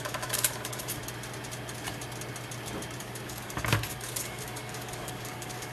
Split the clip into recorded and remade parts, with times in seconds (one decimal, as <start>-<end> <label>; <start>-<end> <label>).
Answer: 0.0-1.0 remade; 1.0-3.0 recorded; 3.0-5.7 remade

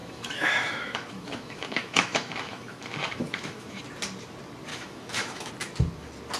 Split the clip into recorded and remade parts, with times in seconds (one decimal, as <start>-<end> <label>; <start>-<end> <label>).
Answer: 0.0-3.8 remade; 3.8-4.7 recorded; 4.7-5.5 remade; 5.5-6.4 recorded